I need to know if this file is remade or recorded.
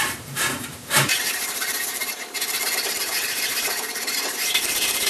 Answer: remade